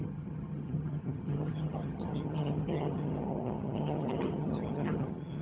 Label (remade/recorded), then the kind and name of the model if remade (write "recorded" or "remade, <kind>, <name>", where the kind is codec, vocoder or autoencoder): remade, vocoder, HiFi-GAN